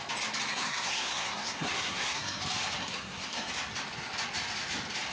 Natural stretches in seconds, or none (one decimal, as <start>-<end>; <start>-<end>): 0.0-0.5; 2.4-2.8; 3.5-5.1